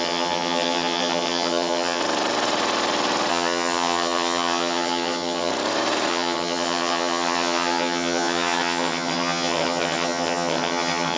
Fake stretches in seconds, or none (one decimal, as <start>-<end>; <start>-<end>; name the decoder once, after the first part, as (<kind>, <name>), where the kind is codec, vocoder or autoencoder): 0.0-2.0 (vocoder, HiFi-GAN); 3.3-5.5; 6.1-11.2